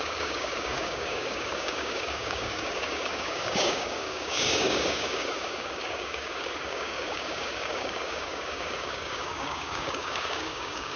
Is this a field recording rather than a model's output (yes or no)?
no